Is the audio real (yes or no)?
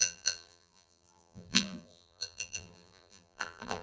no